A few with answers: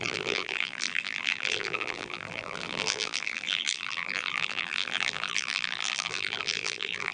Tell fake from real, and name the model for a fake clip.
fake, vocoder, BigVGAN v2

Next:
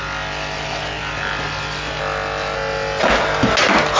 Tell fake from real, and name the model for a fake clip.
real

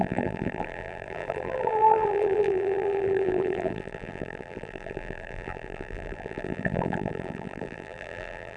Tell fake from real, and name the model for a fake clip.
fake, vocoder, BigVGAN v2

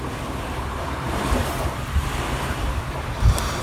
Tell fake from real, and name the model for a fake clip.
fake, vocoder, BigVGAN v2